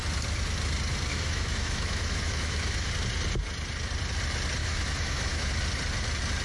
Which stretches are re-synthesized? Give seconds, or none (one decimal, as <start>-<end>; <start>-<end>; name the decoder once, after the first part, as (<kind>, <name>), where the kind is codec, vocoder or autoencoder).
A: 1.1-2.9 (autoencoder, DAC-VAE); 4.6-5.5